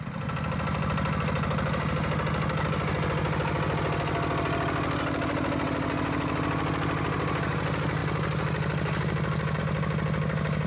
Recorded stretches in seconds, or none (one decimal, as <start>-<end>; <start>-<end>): 0.0-10.7